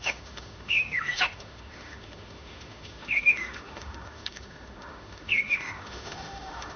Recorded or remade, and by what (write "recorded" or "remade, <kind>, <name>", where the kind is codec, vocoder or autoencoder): remade, autoencoder, DAC-VAE